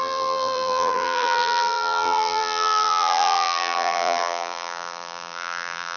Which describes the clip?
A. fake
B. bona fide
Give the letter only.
A